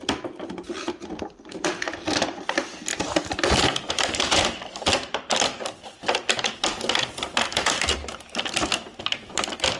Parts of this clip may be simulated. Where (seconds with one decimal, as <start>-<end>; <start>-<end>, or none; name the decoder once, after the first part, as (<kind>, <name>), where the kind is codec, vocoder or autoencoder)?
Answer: none